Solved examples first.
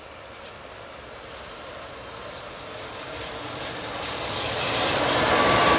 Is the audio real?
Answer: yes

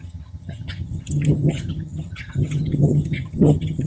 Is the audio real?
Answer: no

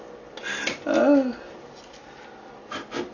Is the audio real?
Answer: yes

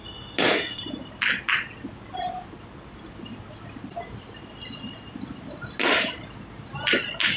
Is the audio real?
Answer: yes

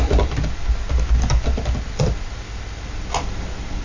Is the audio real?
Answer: yes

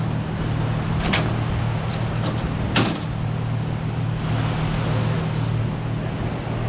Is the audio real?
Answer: yes